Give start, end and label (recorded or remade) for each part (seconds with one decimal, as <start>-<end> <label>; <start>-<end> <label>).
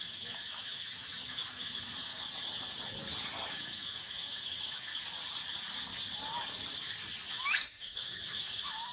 0.0-2.1 remade; 2.1-3.5 recorded; 3.5-4.9 remade; 4.9-7.3 recorded; 7.3-8.9 remade